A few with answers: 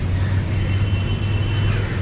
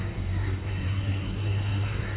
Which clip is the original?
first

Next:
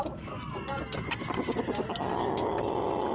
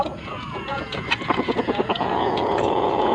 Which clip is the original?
first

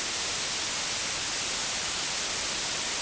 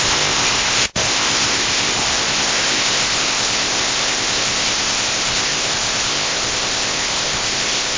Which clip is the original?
first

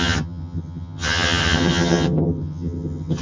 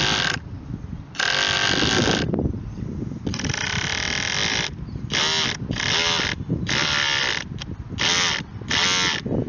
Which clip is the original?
second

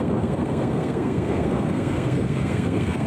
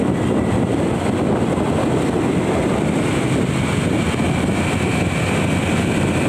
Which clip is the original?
second